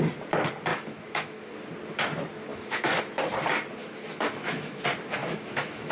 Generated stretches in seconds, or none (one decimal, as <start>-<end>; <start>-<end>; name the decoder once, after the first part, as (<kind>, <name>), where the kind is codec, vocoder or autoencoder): 0.7-1.5 (autoencoder, DAC-VAE); 2.5-3.0; 3.8-4.8; 5.2-5.9